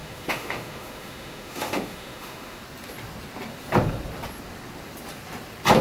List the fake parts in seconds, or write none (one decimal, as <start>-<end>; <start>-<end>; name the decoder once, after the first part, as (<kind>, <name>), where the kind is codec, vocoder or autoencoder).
0.0-2.6 (autoencoder, DAC-VAE)